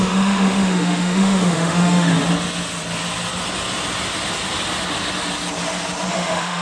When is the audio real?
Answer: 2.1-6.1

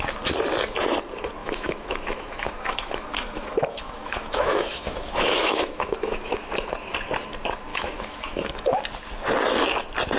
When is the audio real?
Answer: 0.0-1.4; 6.5-7.7; 8.8-10.2